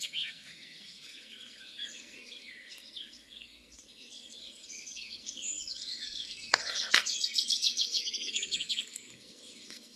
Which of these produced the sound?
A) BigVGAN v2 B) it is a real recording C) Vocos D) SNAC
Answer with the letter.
D